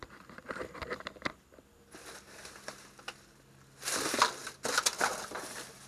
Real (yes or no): yes